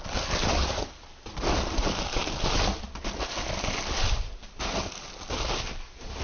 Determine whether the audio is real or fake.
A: real